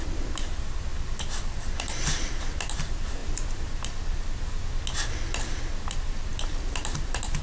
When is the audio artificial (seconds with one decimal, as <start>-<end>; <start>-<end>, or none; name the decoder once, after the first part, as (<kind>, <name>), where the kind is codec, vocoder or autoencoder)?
none